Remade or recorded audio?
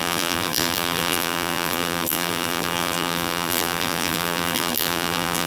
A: remade